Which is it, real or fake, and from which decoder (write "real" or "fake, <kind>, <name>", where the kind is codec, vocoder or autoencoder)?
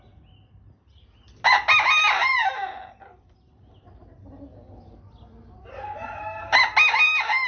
real